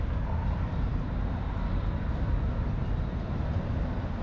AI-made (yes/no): no